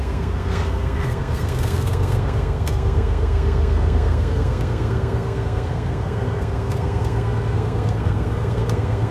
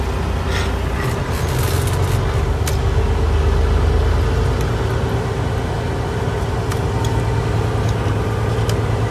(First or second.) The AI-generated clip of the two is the first